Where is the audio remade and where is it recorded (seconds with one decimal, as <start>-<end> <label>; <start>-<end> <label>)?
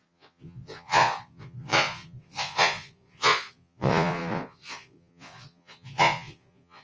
0.0-6.8 remade